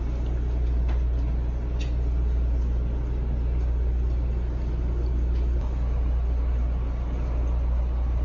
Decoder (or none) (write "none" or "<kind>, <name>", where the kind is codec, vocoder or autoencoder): none